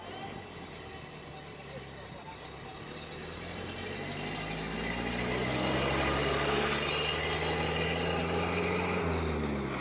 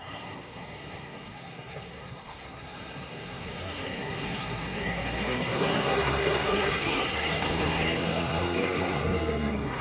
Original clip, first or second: first